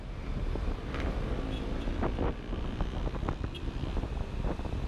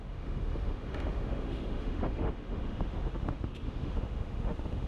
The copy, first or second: second